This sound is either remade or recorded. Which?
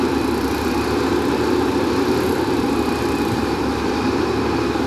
remade